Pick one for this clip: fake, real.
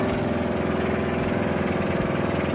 real